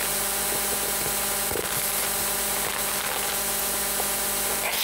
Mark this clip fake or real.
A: real